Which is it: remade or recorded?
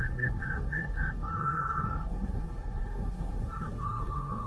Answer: remade